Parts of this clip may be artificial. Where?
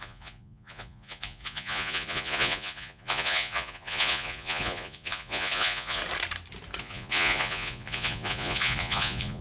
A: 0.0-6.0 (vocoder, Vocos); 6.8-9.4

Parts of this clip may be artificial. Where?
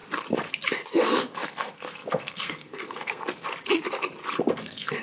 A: 0.9-3.2 (codec, SNAC); 4.5-5.0